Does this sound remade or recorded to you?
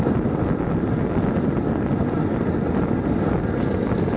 recorded